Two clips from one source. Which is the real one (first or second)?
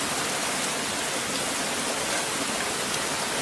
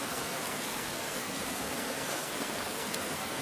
first